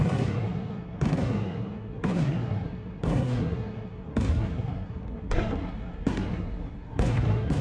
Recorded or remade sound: remade